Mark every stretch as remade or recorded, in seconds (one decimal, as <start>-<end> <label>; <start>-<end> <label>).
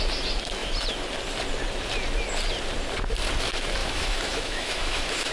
0.0-3.8 recorded; 3.8-5.3 remade